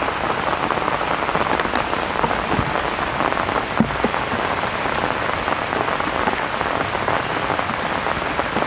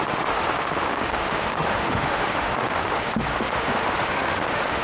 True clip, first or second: first